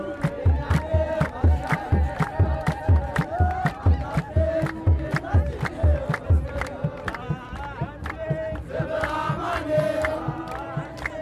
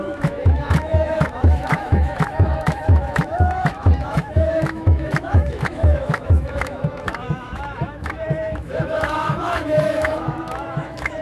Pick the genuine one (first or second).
first